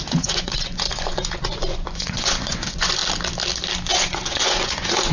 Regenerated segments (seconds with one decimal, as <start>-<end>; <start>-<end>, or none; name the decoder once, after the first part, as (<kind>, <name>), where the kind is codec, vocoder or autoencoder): 0.0-3.0 (vocoder, Vocos); 3.9-5.1